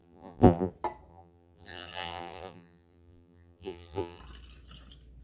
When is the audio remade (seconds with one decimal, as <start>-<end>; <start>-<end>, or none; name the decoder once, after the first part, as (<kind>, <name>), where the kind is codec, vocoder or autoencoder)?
0.0-0.7 (vocoder, BigVGAN v2); 1.1-4.2

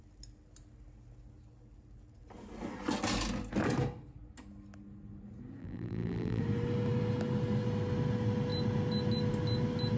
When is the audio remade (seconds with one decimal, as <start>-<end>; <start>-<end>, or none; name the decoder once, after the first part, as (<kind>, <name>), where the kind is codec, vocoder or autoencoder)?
5.6-6.4 (vocoder, BigVGAN v2)

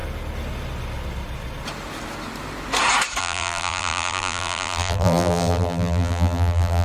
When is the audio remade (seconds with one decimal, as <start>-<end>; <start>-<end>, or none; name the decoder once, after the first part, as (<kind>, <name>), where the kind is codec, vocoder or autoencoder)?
3.2-6.8 (vocoder, BigVGAN v2)

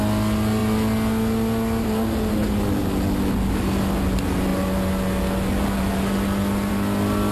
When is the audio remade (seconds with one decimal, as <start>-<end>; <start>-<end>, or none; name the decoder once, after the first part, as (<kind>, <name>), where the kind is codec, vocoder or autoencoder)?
none